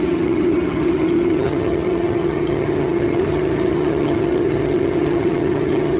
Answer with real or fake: fake